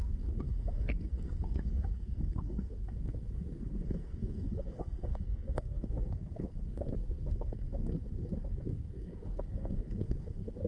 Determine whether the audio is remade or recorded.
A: remade